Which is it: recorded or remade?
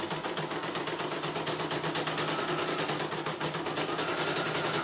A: recorded